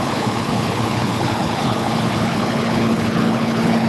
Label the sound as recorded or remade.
remade